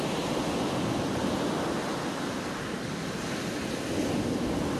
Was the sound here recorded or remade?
recorded